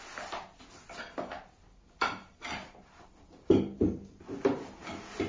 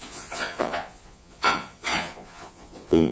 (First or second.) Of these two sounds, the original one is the first